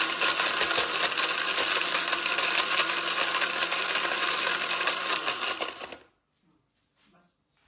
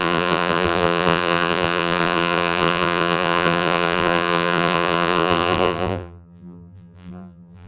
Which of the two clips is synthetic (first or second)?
second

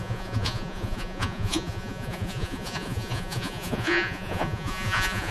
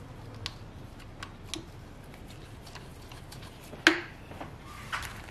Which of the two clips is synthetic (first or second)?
first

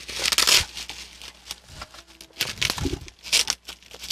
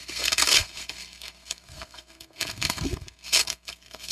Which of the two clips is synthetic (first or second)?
second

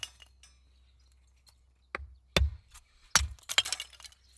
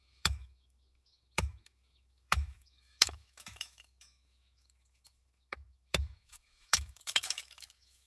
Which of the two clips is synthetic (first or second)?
second